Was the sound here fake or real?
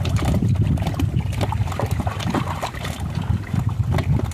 real